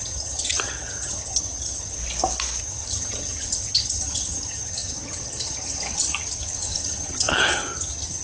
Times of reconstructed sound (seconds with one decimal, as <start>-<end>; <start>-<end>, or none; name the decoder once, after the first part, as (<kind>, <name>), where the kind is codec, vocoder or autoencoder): 0.0-2.0 (vocoder, HiFi-GAN); 2.6-8.2